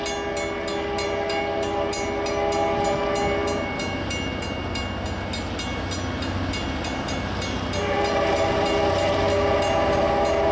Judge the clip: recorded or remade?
recorded